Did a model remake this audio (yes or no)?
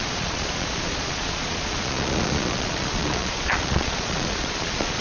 yes